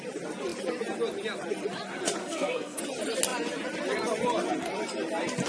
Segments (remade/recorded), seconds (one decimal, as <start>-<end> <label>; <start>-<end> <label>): 0.0-2.2 recorded; 2.2-2.8 remade; 2.8-5.5 recorded